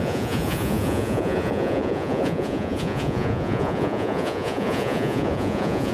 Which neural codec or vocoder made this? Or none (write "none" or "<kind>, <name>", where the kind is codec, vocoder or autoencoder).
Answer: vocoder, Vocos